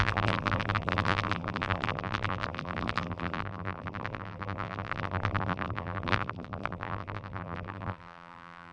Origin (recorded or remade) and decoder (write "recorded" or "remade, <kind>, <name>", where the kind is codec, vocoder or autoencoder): remade, vocoder, BigVGAN v2